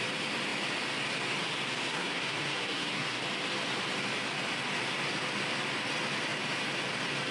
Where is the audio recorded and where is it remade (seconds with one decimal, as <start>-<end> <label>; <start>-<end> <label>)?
0.0-1.9 recorded; 1.9-3.2 remade; 3.2-7.3 recorded